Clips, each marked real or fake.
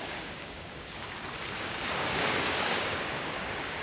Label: fake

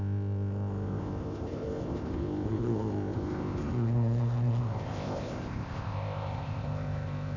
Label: fake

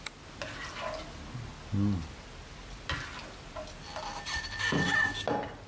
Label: real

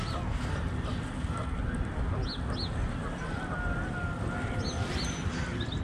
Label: real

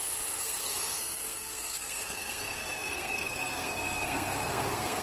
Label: fake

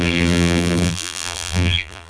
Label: fake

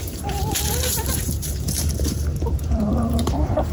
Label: fake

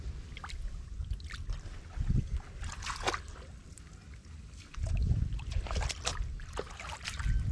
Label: real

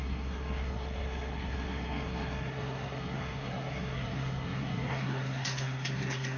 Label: fake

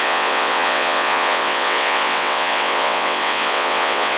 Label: fake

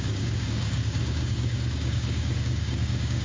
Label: fake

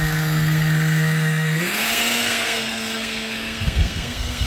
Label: fake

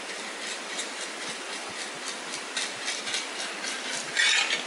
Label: real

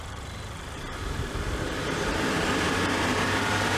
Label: fake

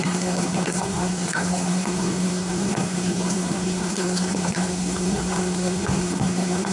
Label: fake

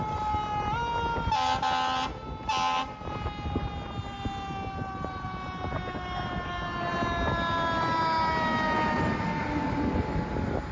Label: real